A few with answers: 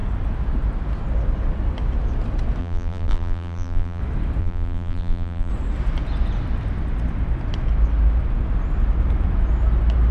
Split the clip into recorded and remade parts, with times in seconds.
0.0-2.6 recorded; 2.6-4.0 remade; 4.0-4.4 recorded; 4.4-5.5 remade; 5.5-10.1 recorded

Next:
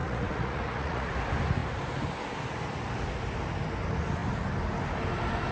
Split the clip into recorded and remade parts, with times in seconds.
0.0-1.1 remade; 1.1-5.5 recorded

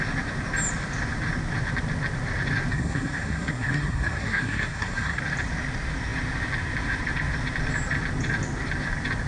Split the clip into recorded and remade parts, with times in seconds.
0.0-2.7 recorded; 2.7-5.2 remade; 5.2-9.3 recorded